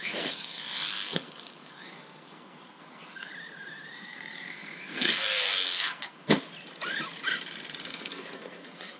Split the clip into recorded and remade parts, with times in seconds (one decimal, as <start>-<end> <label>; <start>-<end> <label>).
0.0-3.3 remade; 3.3-3.9 recorded; 3.9-6.5 remade; 6.5-7.9 recorded; 7.9-9.0 remade